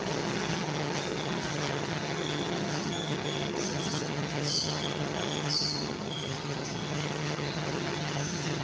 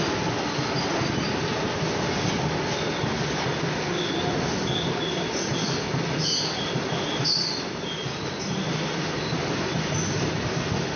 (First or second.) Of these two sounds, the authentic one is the second